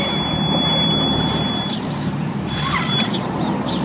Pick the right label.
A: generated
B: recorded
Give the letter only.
B